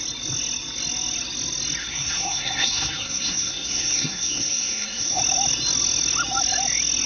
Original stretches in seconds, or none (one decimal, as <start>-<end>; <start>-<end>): 0.0-1.8; 5.2-7.1